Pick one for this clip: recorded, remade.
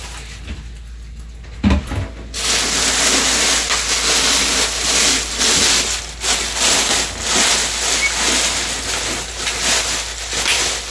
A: recorded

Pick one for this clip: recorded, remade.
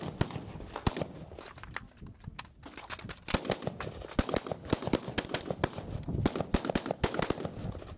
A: recorded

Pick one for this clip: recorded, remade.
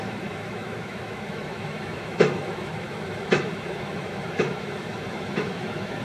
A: remade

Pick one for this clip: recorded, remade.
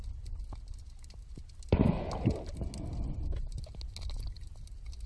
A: recorded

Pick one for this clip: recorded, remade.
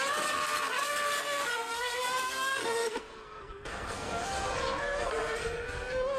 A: remade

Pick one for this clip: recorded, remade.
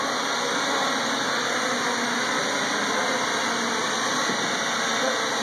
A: recorded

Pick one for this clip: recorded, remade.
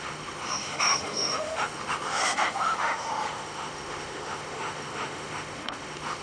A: remade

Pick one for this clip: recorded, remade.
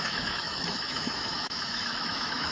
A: remade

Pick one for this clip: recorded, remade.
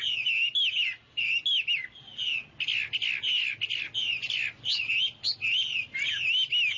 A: recorded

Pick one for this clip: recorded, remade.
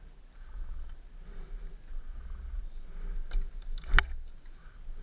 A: recorded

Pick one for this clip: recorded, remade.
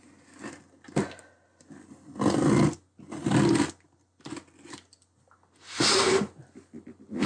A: recorded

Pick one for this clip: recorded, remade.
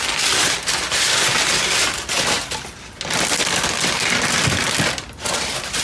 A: recorded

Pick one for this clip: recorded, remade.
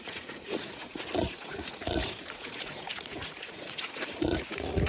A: remade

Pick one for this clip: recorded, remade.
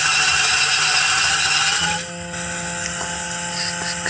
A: recorded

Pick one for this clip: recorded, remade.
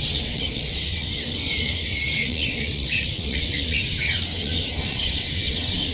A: remade